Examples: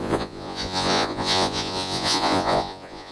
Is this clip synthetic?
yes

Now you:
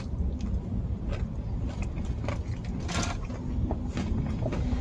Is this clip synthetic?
no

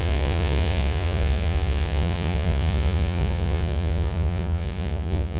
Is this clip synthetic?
yes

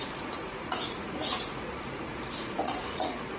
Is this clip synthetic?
yes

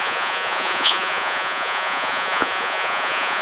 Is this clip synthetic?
yes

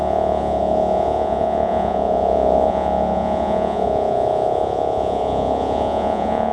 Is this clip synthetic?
yes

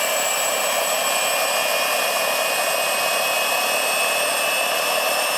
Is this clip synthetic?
no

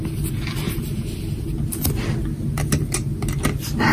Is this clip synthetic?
no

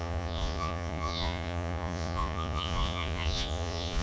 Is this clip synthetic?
yes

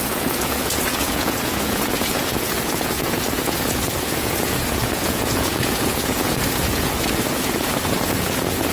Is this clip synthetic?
yes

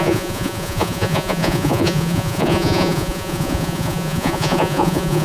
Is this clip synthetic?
yes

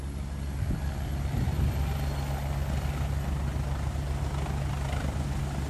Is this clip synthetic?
no